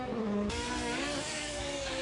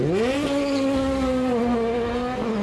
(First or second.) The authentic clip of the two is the second